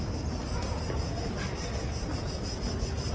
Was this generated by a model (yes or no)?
no